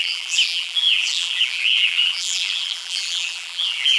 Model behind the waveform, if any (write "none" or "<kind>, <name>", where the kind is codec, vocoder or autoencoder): vocoder, BigVGAN v2